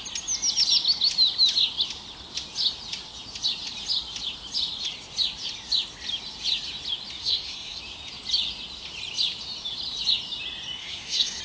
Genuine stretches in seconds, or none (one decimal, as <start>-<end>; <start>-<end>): 0.0-7.2; 7.8-10.8